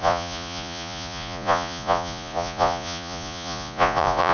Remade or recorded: remade